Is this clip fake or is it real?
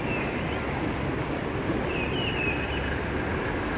real